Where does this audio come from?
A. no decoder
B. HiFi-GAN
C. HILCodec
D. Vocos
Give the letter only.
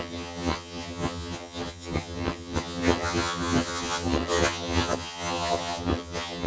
B